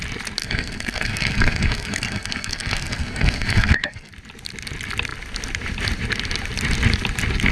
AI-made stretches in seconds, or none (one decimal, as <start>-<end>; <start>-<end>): 0.4-4.1